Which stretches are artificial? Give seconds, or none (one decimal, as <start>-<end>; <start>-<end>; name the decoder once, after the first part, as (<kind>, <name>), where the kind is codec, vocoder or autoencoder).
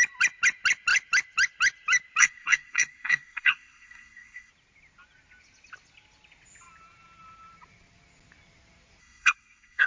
2.2-4.5 (codec, SNAC); 9.0-9.9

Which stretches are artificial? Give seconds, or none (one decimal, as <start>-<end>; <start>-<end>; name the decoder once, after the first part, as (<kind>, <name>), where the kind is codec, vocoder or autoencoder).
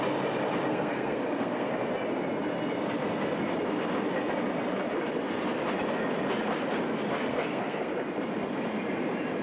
0.7-1.7 (codec, SNAC); 7.3-7.9